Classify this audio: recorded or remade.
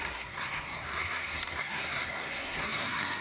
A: remade